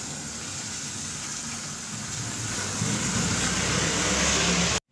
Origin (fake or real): real